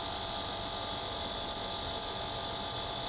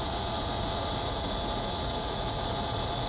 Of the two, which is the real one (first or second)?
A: first